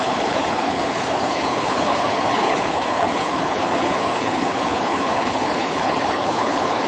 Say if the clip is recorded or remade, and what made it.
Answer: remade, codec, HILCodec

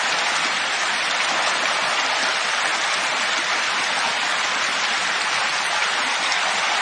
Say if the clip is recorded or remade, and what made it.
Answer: recorded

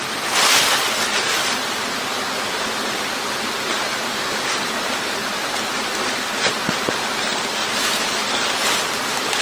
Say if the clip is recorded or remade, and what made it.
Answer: recorded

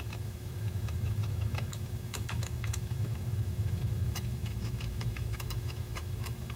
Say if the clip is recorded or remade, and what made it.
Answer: remade, autoencoder, DAC-VAE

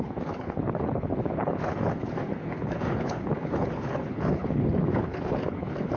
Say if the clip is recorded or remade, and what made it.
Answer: remade, codec, HILCodec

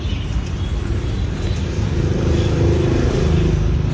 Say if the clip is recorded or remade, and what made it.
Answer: recorded